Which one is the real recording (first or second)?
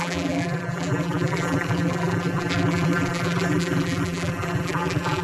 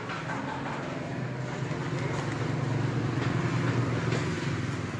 second